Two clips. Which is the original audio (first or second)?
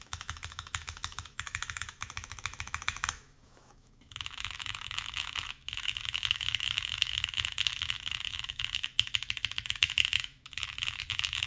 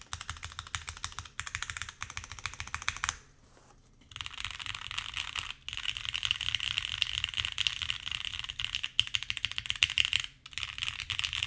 second